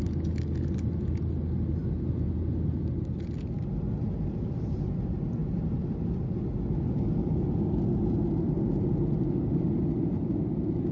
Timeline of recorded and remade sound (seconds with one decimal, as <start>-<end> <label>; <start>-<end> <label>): 0.0-10.9 recorded

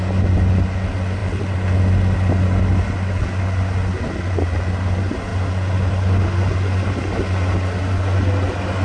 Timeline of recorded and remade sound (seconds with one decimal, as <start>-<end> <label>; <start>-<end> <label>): 0.0-8.8 recorded

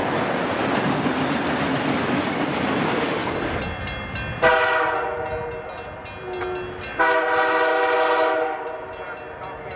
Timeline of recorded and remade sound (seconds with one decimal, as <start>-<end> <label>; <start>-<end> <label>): 0.0-9.8 recorded

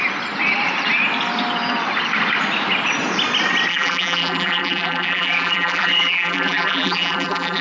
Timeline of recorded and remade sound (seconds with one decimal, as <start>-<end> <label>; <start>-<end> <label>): 0.0-3.7 recorded; 3.7-7.6 remade

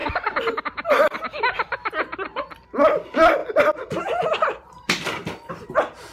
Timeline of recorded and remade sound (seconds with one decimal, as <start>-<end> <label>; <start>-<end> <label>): 0.0-0.6 remade; 0.6-3.4 recorded; 3.4-5.5 remade; 5.5-6.1 recorded

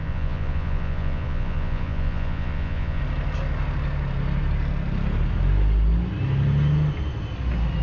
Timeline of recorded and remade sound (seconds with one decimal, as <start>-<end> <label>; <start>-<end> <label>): 0.0-3.0 remade; 3.0-7.8 recorded

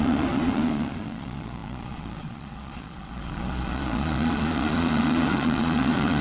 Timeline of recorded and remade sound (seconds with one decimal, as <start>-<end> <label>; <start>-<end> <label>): 0.0-6.2 remade